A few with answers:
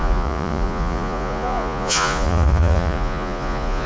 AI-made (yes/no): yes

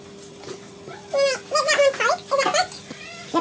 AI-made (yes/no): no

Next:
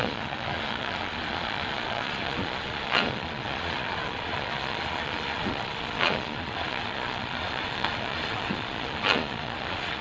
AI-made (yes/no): yes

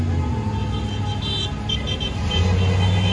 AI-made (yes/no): no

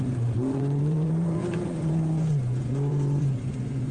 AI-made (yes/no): yes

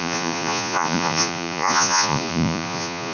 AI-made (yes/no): yes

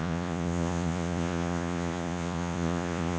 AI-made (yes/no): yes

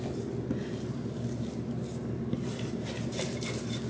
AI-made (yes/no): no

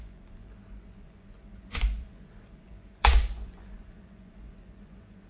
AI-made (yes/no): yes